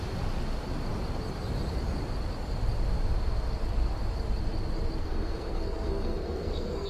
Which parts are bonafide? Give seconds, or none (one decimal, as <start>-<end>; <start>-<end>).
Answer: 0.0-5.0